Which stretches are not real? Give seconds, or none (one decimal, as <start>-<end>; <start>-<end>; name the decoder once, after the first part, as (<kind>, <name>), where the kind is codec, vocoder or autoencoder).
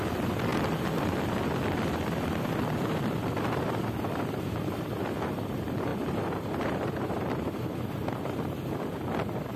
5.9-7.5 (vocoder, BigVGAN v2)